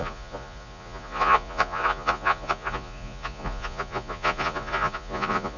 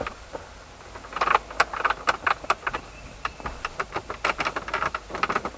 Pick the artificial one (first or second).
first